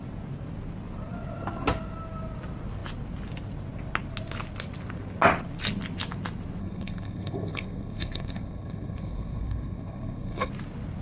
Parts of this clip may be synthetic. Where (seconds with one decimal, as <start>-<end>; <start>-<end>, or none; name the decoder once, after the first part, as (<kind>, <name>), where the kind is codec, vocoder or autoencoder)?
6.6-10.5 (codec, SNAC)